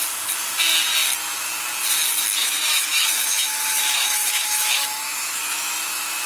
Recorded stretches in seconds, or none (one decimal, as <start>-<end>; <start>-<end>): 0.0-2.4; 5.7-6.3